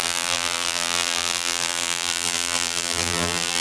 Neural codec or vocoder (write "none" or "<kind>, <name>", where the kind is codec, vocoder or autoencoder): vocoder, BigVGAN v2